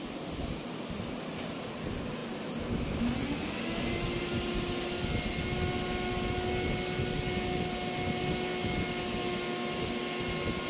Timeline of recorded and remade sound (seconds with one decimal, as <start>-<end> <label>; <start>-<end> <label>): 0.0-10.7 recorded